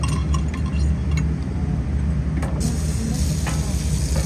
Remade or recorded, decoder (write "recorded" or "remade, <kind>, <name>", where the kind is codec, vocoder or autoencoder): recorded